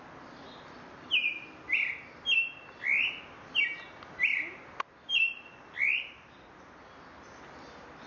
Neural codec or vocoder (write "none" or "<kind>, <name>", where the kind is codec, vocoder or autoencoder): none